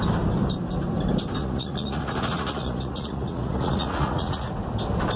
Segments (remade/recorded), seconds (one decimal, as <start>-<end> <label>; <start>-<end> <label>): 0.0-1.4 recorded; 1.4-4.5 remade; 4.5-5.2 recorded